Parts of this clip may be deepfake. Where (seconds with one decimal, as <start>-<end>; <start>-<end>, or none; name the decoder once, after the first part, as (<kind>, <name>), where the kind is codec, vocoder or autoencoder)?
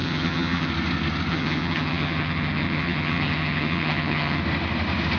0.0-0.7 (vocoder, HiFi-GAN); 1.3-4.4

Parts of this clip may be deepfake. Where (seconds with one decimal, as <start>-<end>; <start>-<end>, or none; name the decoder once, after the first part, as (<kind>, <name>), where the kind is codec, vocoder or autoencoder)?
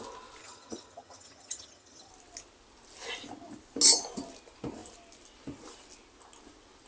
0.4-2.1 (vocoder, HiFi-GAN)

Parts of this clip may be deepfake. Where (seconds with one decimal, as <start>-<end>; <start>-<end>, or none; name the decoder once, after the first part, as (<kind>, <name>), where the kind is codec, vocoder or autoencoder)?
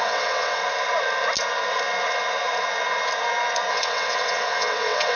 0.0-0.6 (vocoder, WaveNeXt); 3.7-5.2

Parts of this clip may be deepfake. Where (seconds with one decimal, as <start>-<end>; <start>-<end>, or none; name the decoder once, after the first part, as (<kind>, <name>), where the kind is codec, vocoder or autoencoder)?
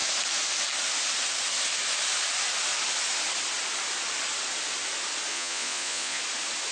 5.3-6.2 (vocoder, Vocos)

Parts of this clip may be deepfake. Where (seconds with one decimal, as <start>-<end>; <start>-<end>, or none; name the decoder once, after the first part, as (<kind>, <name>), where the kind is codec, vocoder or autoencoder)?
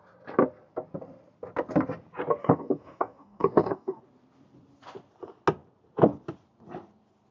2.4-4.0 (codec, DAC)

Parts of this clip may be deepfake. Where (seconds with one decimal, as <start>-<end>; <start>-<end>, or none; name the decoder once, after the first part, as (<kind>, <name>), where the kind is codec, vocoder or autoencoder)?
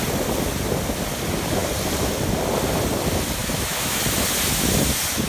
3.4-4.0 (autoencoder, DAC-VAE)